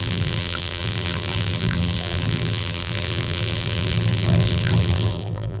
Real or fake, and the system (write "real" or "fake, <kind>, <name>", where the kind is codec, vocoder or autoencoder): fake, vocoder, BigVGAN v2